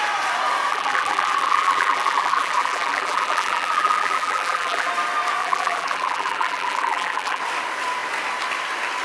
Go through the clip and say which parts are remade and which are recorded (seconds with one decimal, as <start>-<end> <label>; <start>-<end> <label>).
0.0-0.7 recorded; 0.7-4.9 remade; 4.9-5.4 recorded; 5.4-7.4 remade; 7.4-9.0 recorded